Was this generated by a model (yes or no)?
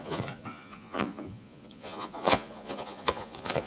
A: yes